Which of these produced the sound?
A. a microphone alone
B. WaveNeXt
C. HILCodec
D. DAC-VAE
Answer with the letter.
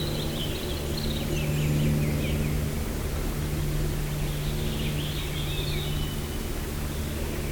A